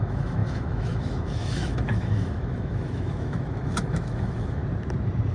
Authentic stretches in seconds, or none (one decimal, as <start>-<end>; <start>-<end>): 4.6-5.3